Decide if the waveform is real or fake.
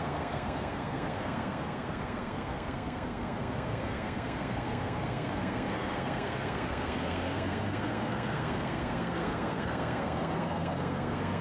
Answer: fake